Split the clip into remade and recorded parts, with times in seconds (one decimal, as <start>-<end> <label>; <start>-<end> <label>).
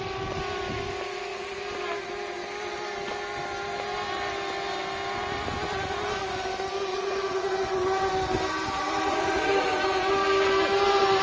0.0-6.9 recorded; 6.9-8.1 remade; 8.1-9.1 recorded; 9.1-10.1 remade; 10.1-11.2 recorded